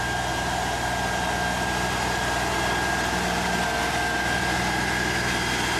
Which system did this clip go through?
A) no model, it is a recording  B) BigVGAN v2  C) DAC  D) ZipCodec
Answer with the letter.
A